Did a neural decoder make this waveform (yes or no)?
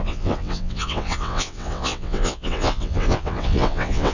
yes